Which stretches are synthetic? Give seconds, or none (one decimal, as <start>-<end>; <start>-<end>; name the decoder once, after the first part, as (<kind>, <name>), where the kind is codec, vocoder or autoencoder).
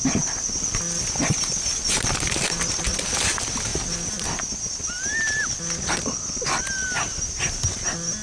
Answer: none